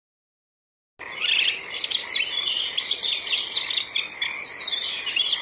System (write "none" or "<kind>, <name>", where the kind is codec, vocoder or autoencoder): none